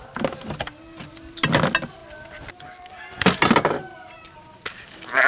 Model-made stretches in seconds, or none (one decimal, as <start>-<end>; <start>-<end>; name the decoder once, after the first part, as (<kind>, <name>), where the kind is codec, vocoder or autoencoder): none